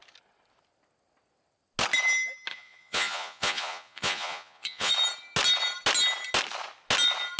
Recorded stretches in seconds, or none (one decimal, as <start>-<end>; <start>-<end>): 0.0-2.5; 4.9-7.4